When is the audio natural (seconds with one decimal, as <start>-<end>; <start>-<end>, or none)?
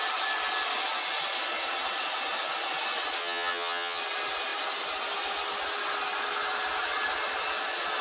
0.0-3.2; 4.0-8.0